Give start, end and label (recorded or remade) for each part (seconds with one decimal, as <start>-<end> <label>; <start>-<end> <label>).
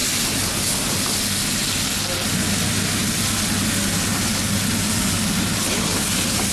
0.0-6.5 recorded